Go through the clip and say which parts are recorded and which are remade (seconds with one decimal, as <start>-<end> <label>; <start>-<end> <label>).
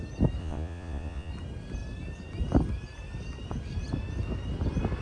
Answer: 0.0-0.4 recorded; 0.4-1.3 remade; 1.3-5.0 recorded